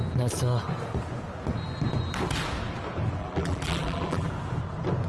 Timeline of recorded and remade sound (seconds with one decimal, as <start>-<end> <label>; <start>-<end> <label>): 0.0-3.2 recorded; 3.2-4.3 remade; 4.3-5.1 recorded